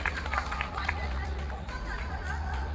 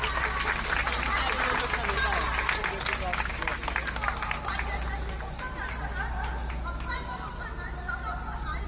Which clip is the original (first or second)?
second